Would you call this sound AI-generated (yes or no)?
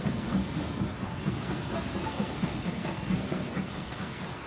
yes